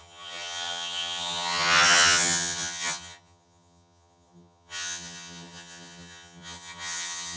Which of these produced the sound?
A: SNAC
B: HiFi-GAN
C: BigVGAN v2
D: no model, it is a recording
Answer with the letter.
B